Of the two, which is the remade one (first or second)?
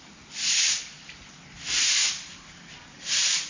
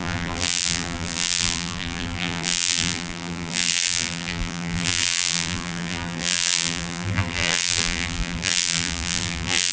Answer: second